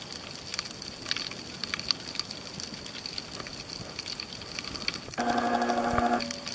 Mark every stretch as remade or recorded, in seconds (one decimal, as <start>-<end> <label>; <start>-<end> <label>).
0.0-6.5 recorded

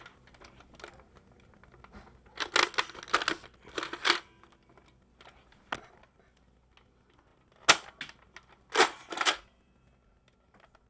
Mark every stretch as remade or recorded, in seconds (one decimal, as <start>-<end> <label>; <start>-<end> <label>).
0.0-10.9 recorded

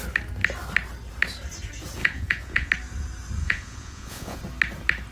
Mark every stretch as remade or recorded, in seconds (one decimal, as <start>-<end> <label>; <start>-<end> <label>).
0.0-2.0 recorded; 2.0-2.7 remade; 2.7-3.4 recorded; 3.4-4.4 remade; 4.4-5.1 recorded

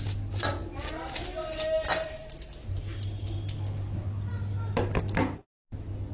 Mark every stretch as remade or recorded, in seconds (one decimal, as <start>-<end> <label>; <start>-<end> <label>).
0.0-6.1 recorded

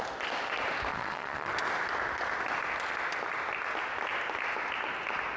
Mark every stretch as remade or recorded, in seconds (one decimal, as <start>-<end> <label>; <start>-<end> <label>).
0.0-0.9 recorded; 0.9-1.5 remade; 1.5-5.4 recorded

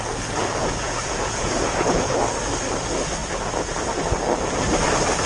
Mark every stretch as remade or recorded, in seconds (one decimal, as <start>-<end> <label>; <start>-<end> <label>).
0.0-0.6 recorded; 0.6-2.2 remade; 2.2-5.3 recorded